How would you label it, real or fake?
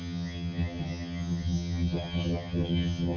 fake